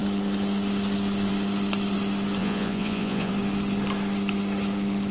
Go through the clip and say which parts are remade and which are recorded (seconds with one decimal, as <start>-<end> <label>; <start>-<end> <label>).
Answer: 0.0-2.4 recorded; 2.4-3.3 remade; 3.3-5.1 recorded

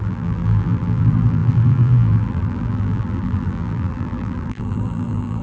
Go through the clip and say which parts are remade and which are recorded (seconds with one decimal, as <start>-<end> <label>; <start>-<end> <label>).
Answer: 0.0-5.4 remade

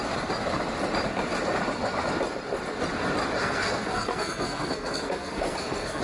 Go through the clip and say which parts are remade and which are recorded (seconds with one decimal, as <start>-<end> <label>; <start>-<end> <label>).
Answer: 0.0-3.4 recorded; 3.4-6.0 remade

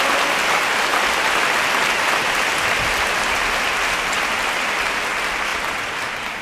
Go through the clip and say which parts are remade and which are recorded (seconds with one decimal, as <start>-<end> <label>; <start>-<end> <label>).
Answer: 0.0-5.5 recorded; 5.5-6.4 remade

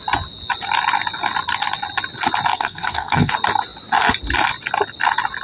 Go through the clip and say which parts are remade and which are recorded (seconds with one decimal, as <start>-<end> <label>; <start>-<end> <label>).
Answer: 0.0-2.5 recorded; 2.5-3.3 remade; 3.3-5.4 recorded

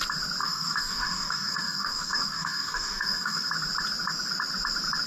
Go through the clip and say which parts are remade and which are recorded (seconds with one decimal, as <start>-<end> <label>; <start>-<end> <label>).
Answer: 0.0-0.4 recorded; 0.4-3.5 remade; 3.5-5.1 recorded

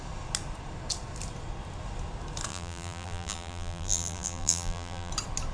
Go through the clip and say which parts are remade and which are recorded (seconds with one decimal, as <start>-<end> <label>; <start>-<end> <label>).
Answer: 0.0-2.5 recorded; 2.5-5.1 remade; 5.1-5.5 recorded

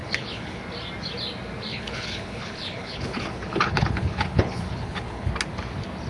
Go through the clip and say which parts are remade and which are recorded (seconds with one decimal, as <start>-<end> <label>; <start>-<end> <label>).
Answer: 0.0-0.6 remade; 0.6-1.7 recorded; 1.7-5.3 remade; 5.3-6.1 recorded